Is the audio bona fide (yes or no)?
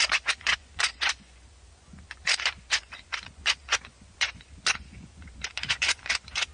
no